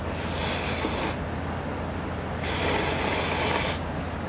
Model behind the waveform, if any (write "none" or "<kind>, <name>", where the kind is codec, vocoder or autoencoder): none